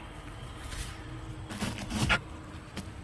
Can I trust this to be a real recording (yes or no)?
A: yes